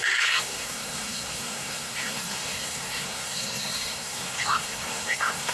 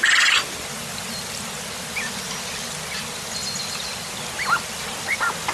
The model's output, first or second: first